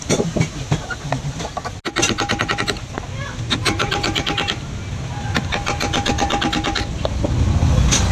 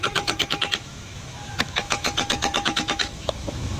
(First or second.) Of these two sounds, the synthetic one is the second